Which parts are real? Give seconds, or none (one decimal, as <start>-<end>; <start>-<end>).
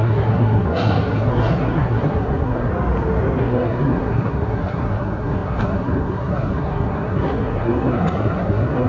2.7-3.4